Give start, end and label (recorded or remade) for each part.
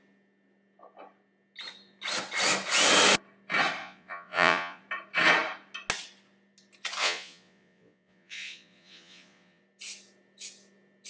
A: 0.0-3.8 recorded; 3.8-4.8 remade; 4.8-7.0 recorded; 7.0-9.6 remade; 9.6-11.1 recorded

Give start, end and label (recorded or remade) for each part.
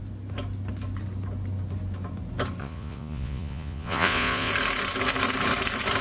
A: 0.0-2.6 recorded; 2.6-4.5 remade; 4.5-6.0 recorded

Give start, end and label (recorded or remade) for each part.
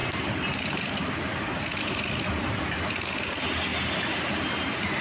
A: 0.0-5.0 recorded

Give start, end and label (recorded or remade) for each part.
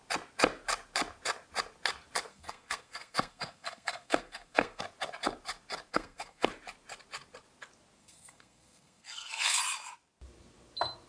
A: 0.0-2.3 recorded; 2.3-4.8 remade; 4.8-5.9 recorded; 5.9-6.5 remade; 6.5-8.0 recorded; 8.0-9.6 remade; 9.6-11.1 recorded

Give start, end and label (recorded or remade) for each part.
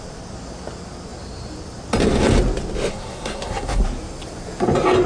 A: 0.0-2.9 recorded; 2.9-3.8 remade; 3.8-5.1 recorded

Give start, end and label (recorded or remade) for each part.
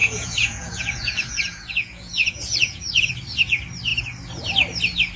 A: 0.0-3.1 remade; 3.1-5.2 recorded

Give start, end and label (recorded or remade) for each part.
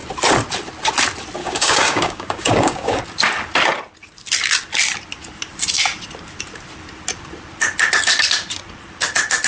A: 0.0-1.4 recorded; 1.4-3.0 remade; 3.0-9.5 recorded